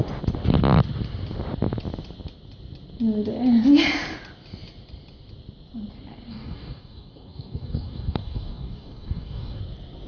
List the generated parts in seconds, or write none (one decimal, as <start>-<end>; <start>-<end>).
6.3-9.6